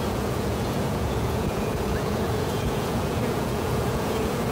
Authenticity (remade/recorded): remade